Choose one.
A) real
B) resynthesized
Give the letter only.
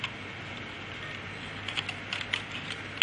A